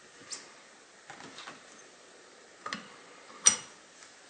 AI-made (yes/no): no